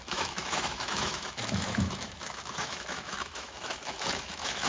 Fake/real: fake